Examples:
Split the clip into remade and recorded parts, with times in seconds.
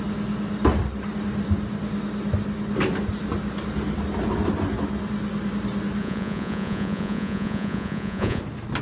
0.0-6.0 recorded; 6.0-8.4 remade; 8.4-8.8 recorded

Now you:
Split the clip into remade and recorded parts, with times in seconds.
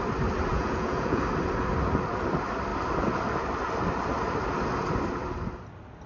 0.0-0.5 recorded; 0.5-1.2 remade; 1.2-6.1 recorded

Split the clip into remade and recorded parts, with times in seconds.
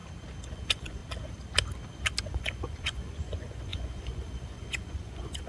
0.0-0.5 recorded; 0.5-1.0 remade; 1.0-2.2 recorded; 2.2-5.5 remade